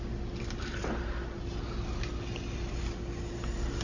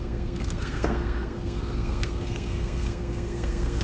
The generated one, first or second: second